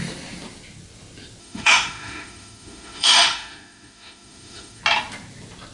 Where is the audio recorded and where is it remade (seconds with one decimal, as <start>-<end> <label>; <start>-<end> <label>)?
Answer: 0.0-1.4 recorded; 1.4-4.8 remade; 4.8-5.7 recorded

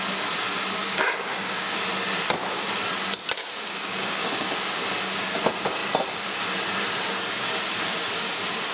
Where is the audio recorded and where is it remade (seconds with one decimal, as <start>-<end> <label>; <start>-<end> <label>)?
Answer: 0.0-0.8 recorded; 0.8-1.8 remade; 1.8-3.4 recorded; 3.4-4.8 remade; 4.8-8.7 recorded

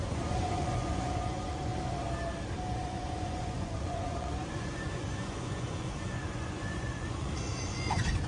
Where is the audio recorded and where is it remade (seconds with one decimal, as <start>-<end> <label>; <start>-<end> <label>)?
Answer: 0.0-1.7 remade; 1.7-2.7 recorded; 2.7-8.3 remade

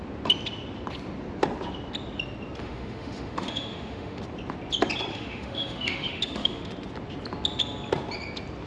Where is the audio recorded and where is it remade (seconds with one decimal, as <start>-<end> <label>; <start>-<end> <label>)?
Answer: 0.0-2.6 recorded; 2.6-4.2 remade; 4.2-5.1 recorded; 5.1-6.7 remade; 6.7-8.7 recorded

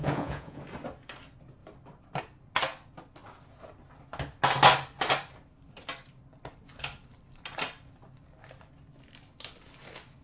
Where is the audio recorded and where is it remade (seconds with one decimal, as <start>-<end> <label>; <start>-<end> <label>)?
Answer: 0.0-0.6 remade; 0.6-10.2 recorded

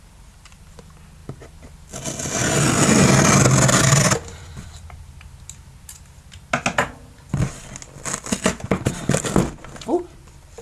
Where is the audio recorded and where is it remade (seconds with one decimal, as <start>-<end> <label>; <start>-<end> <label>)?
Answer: 0.0-10.6 recorded

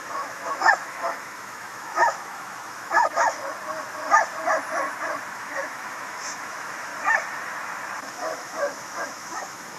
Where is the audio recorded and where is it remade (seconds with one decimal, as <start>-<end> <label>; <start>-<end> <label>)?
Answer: 0.0-3.4 remade; 3.4-5.3 recorded; 5.3-6.9 remade; 6.9-8.0 recorded; 8.0-9.8 remade

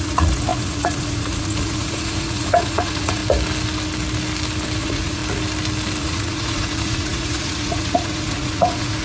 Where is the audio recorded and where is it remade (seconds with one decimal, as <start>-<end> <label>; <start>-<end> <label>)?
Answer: 0.0-3.2 remade; 3.2-4.8 recorded; 4.8-5.2 remade; 5.2-6.0 recorded; 6.0-9.0 remade